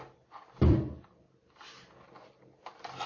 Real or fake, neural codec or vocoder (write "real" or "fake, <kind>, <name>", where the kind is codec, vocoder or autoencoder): fake, vocoder, BigVGAN v2